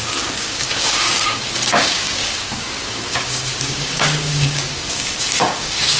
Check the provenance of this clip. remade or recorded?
remade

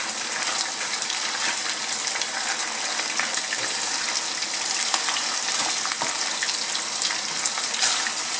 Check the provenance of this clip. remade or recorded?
recorded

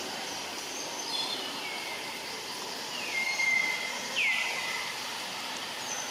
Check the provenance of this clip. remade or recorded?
remade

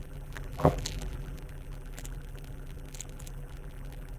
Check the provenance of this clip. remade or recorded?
remade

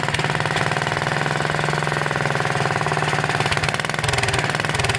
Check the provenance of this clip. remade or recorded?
recorded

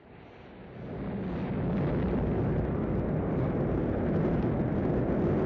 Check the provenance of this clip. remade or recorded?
recorded